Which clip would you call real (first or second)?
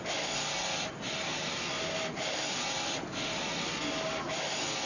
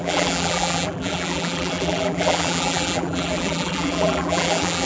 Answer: first